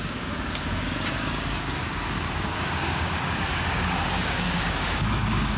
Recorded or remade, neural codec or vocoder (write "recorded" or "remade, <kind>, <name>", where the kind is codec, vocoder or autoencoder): remade, codec, DAC